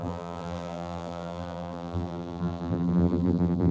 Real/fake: fake